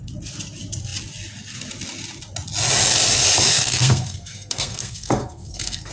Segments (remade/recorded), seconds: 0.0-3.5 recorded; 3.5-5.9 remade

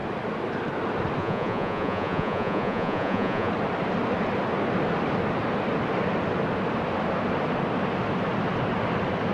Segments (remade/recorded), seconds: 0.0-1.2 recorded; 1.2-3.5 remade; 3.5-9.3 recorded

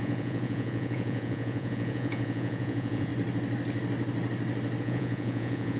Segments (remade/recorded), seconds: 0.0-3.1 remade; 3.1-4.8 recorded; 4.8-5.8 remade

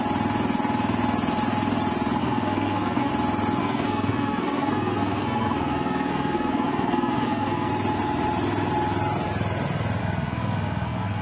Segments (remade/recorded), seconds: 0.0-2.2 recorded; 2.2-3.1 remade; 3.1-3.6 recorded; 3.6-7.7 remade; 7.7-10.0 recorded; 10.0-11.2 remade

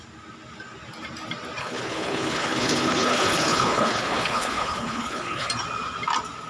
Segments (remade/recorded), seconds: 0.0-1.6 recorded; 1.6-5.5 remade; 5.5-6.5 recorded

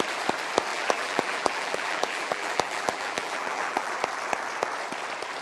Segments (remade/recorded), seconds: 0.0-0.7 recorded; 0.7-3.9 remade; 3.9-5.4 recorded

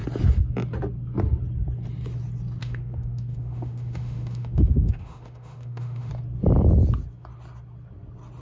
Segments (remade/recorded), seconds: 0.0-2.6 recorded; 2.6-6.1 remade; 6.1-8.4 recorded